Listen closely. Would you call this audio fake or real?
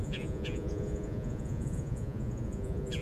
fake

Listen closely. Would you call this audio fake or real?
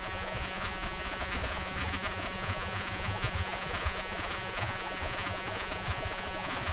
fake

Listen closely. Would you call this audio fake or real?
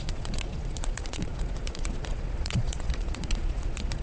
fake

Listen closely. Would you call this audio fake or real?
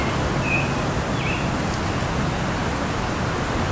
real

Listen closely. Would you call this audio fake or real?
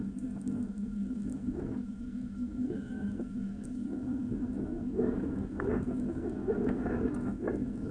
fake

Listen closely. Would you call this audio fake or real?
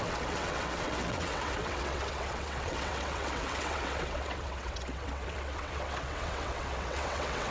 fake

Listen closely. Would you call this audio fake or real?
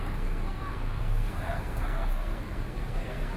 fake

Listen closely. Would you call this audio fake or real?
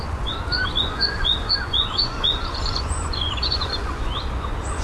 fake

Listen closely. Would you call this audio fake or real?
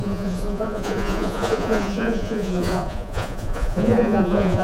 fake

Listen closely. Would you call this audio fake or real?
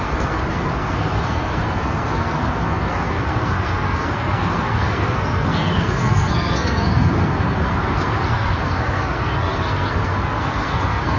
fake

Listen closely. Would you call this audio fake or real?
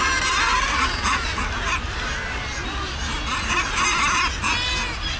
real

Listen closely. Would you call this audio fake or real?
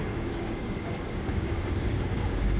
fake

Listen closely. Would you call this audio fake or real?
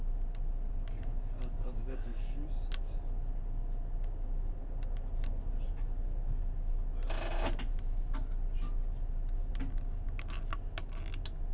real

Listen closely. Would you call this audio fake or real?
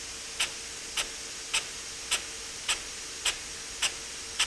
real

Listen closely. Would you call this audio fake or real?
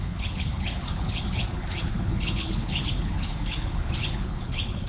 fake